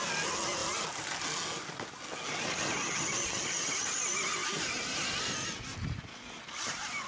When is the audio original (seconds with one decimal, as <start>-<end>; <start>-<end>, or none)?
0.0-7.1

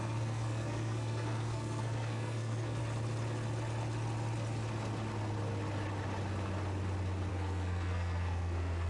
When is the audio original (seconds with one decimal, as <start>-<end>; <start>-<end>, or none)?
2.8-7.3